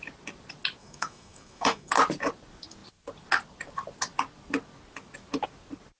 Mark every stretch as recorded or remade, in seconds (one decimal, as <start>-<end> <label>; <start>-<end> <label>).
0.0-0.8 recorded; 0.8-1.9 remade; 1.9-6.0 recorded